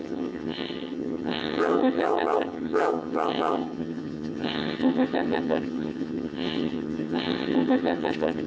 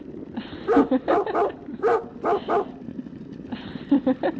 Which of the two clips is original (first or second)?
second